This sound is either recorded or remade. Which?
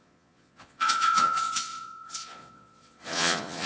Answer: remade